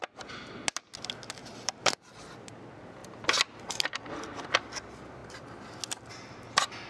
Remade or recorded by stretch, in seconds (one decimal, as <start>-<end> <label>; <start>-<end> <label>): 0.0-1.4 recorded; 1.4-2.2 remade; 2.2-6.9 recorded